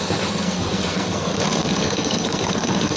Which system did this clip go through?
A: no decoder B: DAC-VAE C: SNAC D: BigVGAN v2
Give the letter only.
C